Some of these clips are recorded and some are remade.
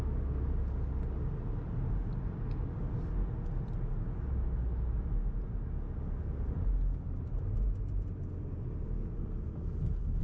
recorded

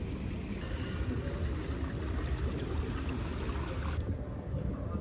recorded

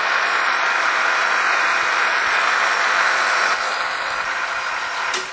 recorded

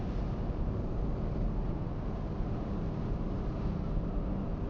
remade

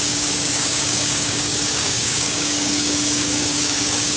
remade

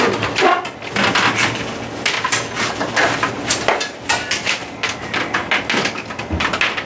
recorded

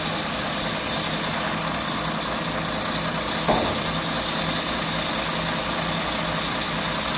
recorded